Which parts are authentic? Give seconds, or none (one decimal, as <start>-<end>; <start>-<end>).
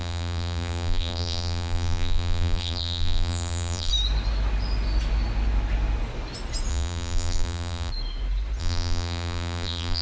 3.9-6.7; 7.9-8.6